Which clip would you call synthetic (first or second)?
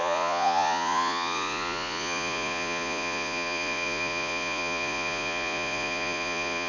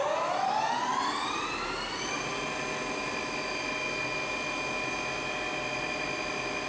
first